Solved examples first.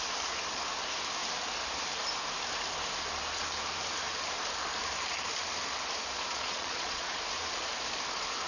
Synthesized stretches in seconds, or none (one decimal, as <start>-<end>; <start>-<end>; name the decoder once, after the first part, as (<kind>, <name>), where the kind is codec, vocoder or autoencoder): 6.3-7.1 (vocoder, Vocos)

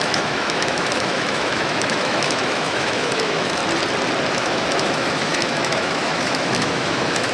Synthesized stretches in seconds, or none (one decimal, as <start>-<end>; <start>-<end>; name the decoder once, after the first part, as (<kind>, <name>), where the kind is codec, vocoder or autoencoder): 0.0-3.6 (autoencoder, DAC-VAE); 4.3-7.3

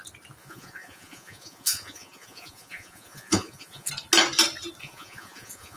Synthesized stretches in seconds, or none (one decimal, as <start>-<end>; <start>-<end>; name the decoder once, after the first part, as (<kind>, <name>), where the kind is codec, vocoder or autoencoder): 0.4-3.9 (vocoder, Vocos); 4.8-5.8

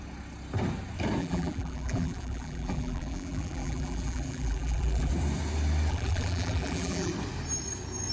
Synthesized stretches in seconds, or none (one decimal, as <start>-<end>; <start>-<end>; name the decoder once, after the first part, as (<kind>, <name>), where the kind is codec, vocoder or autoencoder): 1.2-5.1 (vocoder, BigVGAN v2); 5.9-7.1